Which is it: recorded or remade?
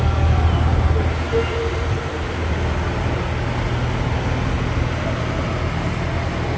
recorded